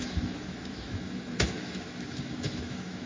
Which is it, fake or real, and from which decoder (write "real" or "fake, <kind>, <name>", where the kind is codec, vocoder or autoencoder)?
fake, autoencoder, DAC-VAE